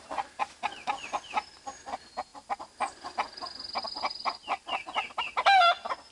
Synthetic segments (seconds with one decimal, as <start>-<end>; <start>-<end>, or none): none